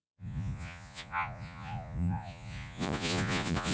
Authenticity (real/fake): fake